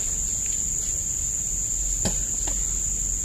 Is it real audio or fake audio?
real